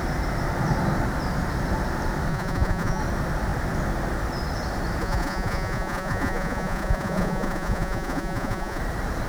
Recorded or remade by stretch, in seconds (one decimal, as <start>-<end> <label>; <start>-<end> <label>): 0.0-2.3 recorded; 2.3-3.0 remade; 3.0-5.0 recorded; 5.0-8.8 remade; 8.8-9.3 recorded